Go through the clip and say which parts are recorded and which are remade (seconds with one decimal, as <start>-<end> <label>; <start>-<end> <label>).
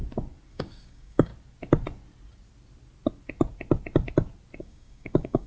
0.0-0.5 recorded; 0.5-1.3 remade; 1.3-4.6 recorded; 4.6-5.5 remade